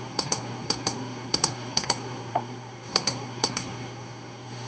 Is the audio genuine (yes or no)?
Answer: no